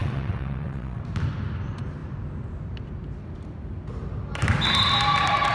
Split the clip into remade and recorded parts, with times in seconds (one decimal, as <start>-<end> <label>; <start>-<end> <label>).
0.0-1.0 remade; 1.0-5.5 recorded